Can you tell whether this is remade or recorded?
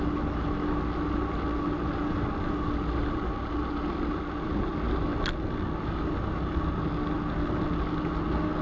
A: recorded